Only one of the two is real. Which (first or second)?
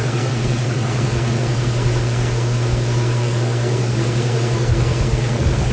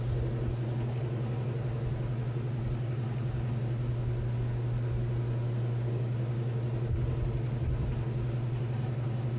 second